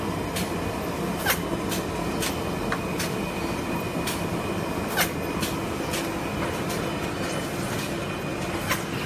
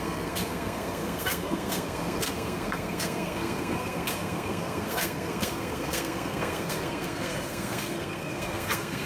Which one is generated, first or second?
second